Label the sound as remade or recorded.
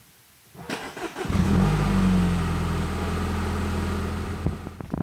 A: recorded